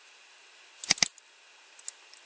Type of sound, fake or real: real